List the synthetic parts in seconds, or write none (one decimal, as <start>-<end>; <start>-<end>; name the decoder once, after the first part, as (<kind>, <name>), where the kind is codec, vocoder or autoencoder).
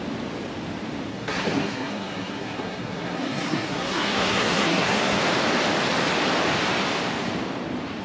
1.1-5.2 (codec, SNAC)